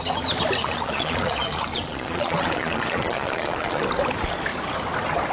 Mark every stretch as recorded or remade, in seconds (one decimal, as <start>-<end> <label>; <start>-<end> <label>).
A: 0.0-0.6 recorded; 0.6-3.8 remade; 3.8-5.3 recorded